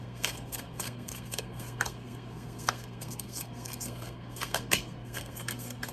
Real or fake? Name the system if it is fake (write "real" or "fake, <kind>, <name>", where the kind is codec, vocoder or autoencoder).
fake, codec, SNAC